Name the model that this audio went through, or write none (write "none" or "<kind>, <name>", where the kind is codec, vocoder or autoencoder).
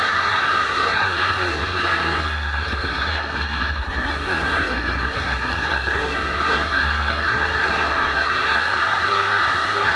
codec, SNAC